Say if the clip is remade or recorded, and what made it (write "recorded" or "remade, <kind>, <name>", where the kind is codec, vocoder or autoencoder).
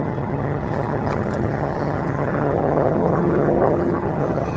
remade, vocoder, HiFi-GAN